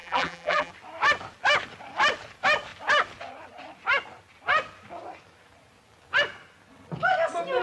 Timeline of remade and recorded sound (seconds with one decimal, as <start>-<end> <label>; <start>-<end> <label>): 0.0-0.7 remade; 0.7-7.6 recorded